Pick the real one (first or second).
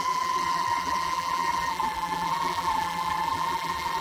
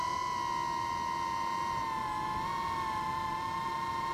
second